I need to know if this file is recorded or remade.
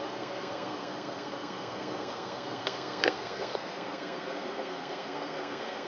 remade